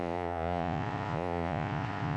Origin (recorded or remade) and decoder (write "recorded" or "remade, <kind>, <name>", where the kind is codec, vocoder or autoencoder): remade, vocoder, Vocos